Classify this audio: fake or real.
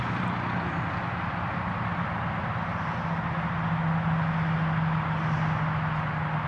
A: real